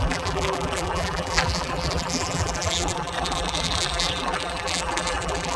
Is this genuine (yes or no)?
no